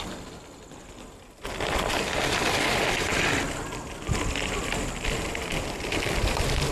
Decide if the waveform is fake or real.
fake